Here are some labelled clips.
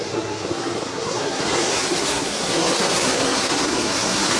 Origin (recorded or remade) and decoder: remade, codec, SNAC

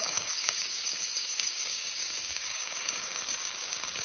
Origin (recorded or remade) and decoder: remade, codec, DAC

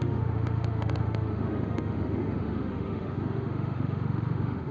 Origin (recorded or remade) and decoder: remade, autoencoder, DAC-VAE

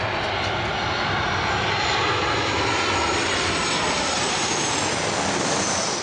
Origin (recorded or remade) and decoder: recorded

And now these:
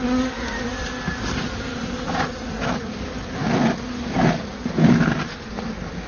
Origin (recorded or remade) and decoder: recorded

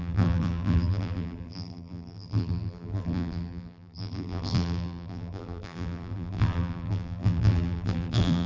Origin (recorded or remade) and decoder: remade, vocoder, BigVGAN v2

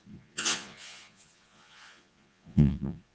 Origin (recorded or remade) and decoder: remade, vocoder, Vocos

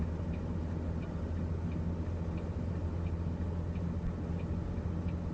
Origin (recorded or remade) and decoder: recorded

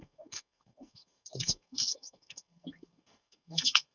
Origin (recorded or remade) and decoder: remade, codec, SNAC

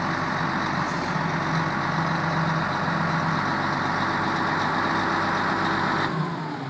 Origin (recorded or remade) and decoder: recorded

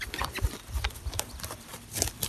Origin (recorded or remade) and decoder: remade, vocoder, BigVGAN v2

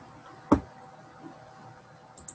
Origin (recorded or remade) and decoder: recorded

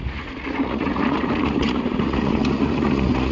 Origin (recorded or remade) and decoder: remade, vocoder, Vocos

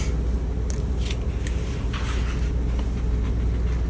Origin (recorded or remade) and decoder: recorded